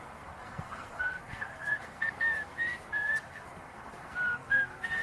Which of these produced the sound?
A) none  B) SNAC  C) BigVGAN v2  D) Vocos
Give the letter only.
B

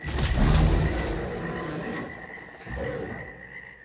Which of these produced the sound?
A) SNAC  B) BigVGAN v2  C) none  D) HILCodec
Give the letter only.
C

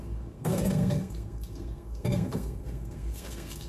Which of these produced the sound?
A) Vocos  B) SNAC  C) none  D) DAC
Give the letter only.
B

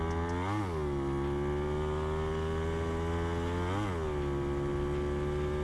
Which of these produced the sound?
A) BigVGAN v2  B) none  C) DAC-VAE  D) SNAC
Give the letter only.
B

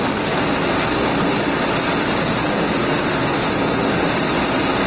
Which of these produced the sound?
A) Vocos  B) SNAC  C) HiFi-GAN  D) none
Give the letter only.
D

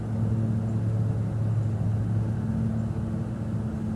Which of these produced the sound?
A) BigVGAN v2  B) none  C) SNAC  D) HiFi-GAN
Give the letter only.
B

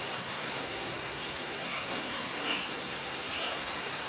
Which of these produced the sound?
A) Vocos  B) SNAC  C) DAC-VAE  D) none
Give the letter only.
B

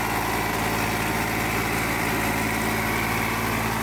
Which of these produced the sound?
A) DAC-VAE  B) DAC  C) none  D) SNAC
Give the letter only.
C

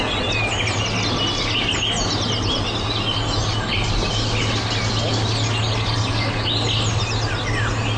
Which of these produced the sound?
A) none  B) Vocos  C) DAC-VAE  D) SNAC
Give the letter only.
A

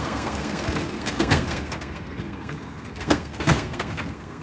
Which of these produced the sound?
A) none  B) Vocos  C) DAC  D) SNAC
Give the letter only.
D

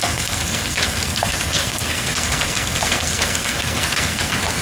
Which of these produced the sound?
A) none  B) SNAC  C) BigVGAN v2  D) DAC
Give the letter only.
B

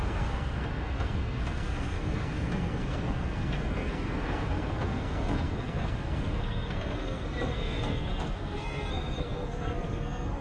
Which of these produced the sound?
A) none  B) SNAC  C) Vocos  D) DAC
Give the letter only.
B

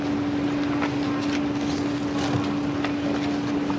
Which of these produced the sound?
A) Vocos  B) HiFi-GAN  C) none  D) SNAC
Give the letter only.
C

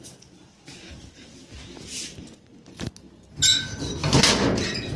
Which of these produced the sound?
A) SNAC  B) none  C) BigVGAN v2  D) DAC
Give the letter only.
B